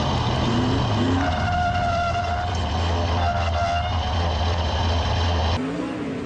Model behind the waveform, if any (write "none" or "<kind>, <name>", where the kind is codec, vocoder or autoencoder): none